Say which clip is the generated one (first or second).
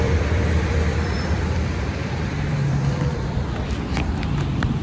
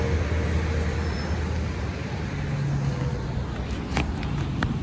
first